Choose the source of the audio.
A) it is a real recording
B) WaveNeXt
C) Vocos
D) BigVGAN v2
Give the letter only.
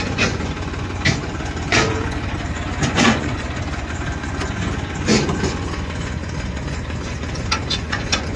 C